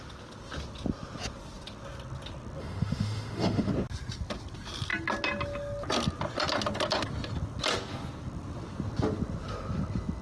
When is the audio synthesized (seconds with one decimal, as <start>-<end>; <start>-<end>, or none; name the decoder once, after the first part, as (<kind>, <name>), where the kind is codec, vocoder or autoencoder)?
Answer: 2.6-3.7 (autoencoder, DAC-VAE)